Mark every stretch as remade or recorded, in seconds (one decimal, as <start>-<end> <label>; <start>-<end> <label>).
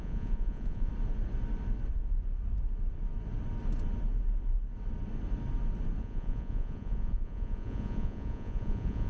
0.0-0.9 remade; 0.9-6.0 recorded; 6.0-9.1 remade